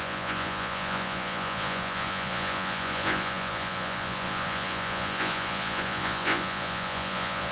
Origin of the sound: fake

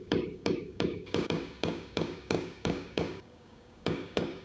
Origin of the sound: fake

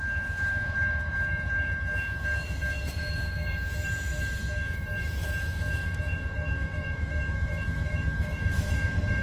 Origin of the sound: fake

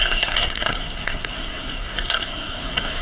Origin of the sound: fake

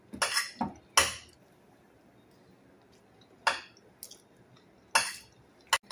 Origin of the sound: real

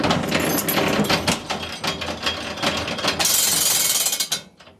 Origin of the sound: real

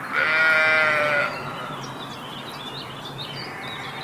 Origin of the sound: real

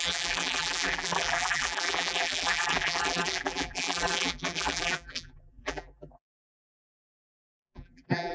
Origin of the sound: fake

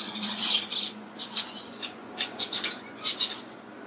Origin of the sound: fake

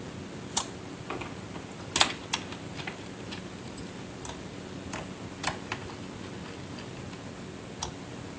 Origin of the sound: real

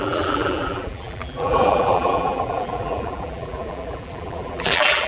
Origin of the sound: fake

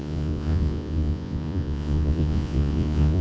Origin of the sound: fake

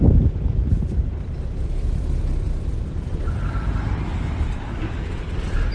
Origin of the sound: fake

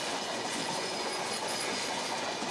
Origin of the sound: fake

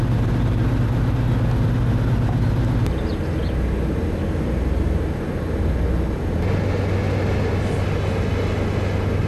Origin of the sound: real